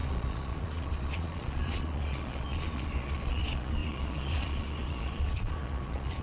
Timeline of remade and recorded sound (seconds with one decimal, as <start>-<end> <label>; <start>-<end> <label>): 0.0-6.2 remade